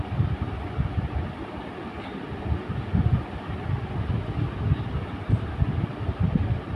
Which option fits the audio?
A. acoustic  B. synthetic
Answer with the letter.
A